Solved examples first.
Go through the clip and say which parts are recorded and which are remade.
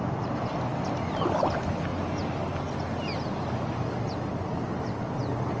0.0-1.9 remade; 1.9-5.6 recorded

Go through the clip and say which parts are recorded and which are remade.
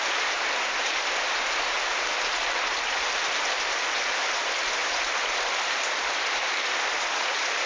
0.0-7.7 recorded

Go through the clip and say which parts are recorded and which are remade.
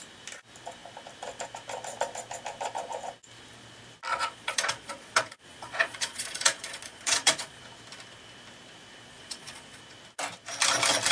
0.0-4.1 recorded; 4.1-7.6 remade; 7.6-9.1 recorded; 9.1-9.8 remade; 9.8-11.1 recorded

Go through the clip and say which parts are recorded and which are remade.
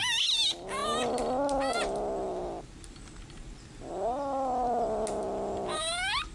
0.0-6.3 recorded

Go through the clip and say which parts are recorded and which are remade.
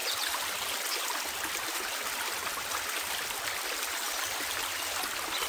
0.0-5.5 recorded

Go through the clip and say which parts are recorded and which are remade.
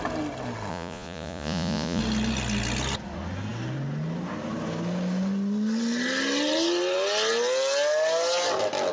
0.0-0.7 recorded; 0.7-2.0 remade; 2.0-8.9 recorded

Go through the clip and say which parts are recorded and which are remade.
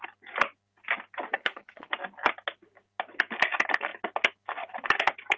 0.0-1.3 recorded; 1.3-1.9 remade; 1.9-5.4 recorded